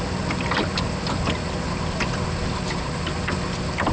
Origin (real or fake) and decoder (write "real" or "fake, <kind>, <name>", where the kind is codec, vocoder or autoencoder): real